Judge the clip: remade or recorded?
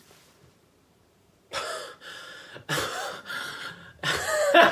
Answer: remade